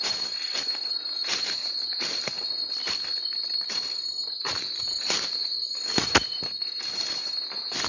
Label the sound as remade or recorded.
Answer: recorded